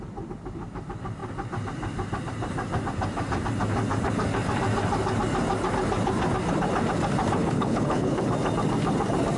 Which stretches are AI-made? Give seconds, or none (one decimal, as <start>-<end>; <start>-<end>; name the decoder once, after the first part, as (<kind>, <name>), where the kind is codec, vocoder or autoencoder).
7.4-8.2 (codec, HILCodec)